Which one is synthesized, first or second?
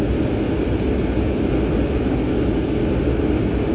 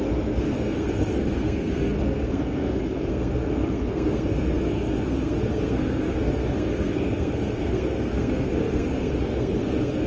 second